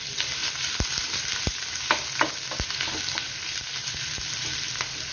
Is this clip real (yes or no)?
yes